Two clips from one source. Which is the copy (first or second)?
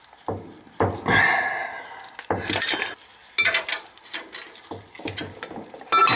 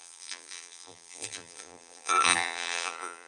second